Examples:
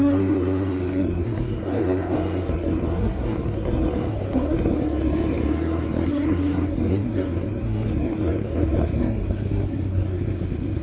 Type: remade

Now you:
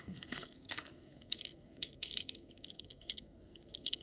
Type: remade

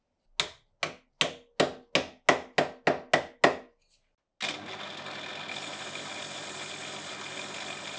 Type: recorded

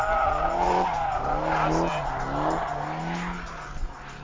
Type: recorded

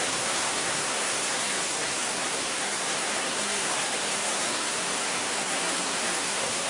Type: remade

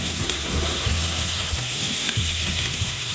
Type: remade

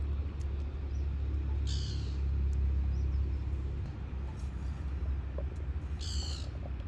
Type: recorded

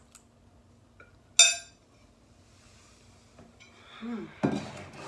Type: recorded